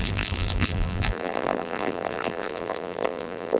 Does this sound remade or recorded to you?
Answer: remade